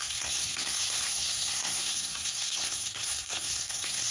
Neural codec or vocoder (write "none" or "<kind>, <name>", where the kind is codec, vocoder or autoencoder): codec, SNAC